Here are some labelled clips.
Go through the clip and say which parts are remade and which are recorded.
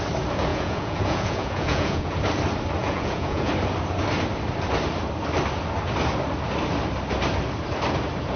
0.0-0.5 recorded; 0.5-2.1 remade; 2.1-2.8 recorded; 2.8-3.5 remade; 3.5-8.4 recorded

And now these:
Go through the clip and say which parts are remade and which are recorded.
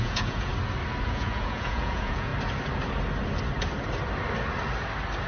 0.0-0.5 remade; 0.5-1.0 recorded; 1.0-2.3 remade; 2.3-5.3 recorded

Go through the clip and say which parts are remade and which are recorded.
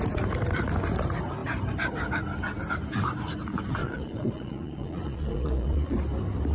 0.0-3.8 recorded; 3.8-6.0 remade; 6.0-6.5 recorded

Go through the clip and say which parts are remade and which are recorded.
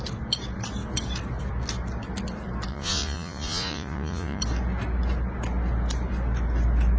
0.0-2.7 recorded; 2.7-4.4 remade; 4.4-7.0 recorded